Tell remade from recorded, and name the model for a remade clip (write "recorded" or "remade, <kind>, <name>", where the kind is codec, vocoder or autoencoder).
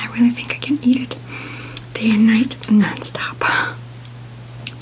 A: recorded